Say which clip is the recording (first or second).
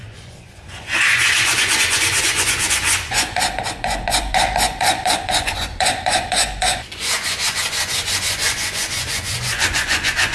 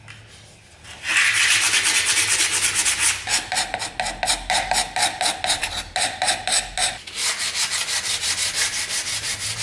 second